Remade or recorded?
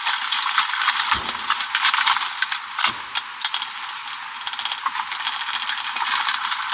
recorded